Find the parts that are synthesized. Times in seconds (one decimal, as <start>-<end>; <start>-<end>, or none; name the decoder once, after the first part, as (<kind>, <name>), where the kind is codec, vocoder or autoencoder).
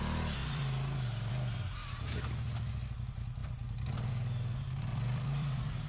0.4-1.3 (vocoder, BigVGAN v2); 3.4-4.1; 4.9-5.9